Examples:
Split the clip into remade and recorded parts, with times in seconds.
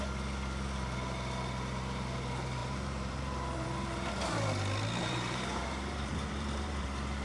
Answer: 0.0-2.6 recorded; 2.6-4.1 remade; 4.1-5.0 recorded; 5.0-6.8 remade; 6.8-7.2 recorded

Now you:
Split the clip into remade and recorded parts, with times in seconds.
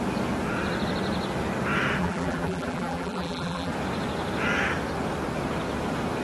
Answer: 0.0-2.0 recorded; 2.0-3.7 remade; 3.7-6.2 recorded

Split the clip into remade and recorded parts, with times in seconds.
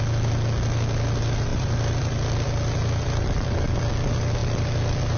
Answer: 0.0-1.5 recorded; 1.5-3.9 remade; 3.9-4.4 recorded; 4.4-5.2 remade